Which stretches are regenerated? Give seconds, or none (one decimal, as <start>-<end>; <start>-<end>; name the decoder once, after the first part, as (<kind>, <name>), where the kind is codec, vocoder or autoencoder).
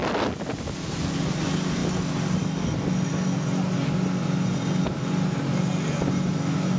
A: none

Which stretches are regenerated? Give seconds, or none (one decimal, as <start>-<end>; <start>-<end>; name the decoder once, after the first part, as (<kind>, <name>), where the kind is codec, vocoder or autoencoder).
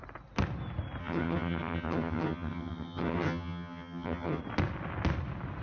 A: 1.0-4.4 (vocoder, HiFi-GAN)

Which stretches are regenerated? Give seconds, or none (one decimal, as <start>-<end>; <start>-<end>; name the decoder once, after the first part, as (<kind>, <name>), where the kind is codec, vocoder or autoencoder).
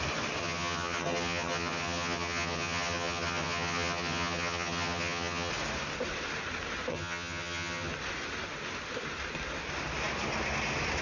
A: 0.4-5.5 (vocoder, HiFi-GAN); 6.9-7.9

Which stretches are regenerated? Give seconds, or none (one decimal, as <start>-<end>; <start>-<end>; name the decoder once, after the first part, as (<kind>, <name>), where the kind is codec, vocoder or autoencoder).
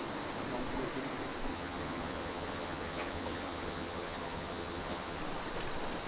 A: 1.5-5.2 (vocoder, HiFi-GAN)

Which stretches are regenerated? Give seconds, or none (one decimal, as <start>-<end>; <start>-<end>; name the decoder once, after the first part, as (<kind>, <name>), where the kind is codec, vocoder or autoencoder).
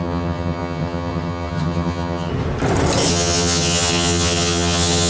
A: 0.0-2.3 (vocoder, HiFi-GAN); 3.1-5.1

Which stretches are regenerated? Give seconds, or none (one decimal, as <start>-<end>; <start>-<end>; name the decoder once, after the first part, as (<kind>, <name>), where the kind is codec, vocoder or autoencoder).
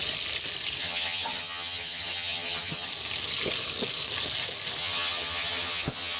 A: 0.8-2.9 (vocoder, HiFi-GAN); 4.8-6.2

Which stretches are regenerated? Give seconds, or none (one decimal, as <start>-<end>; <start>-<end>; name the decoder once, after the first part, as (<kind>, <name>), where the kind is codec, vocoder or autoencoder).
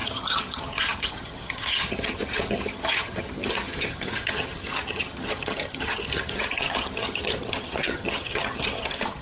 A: 0.0-9.2 (vocoder, HiFi-GAN)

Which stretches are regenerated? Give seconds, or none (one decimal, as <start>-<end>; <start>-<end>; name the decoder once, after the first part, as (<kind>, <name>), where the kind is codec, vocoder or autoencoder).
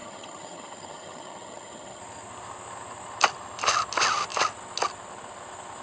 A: 0.0-2.0 (vocoder, HiFi-GAN)